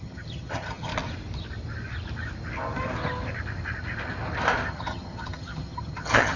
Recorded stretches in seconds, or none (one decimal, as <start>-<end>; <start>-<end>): 0.9-4.7